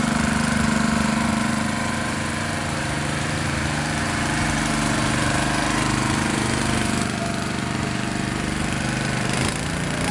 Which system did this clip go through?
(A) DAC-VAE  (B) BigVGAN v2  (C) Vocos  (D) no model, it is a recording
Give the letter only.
B